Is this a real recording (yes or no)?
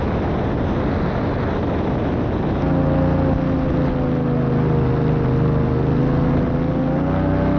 yes